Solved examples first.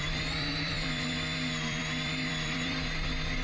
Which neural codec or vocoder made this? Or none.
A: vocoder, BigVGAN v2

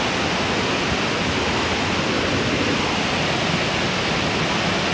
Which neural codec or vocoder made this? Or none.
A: none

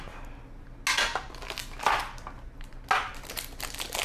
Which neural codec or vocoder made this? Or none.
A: none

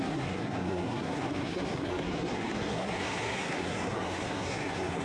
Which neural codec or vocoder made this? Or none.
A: codec, SNAC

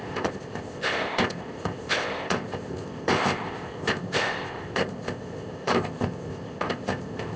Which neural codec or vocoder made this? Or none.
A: codec, ZipCodec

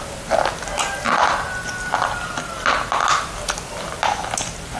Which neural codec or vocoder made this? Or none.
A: none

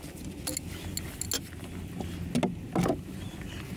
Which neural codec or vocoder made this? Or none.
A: none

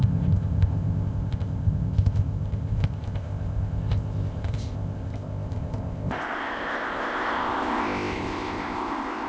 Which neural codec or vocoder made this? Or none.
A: codec, ZipCodec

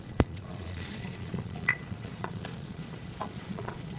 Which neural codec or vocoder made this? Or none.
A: vocoder, Vocos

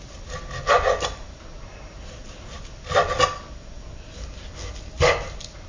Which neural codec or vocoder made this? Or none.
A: none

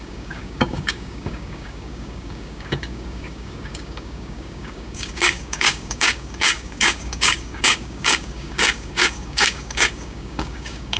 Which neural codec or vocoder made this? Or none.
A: codec, DAC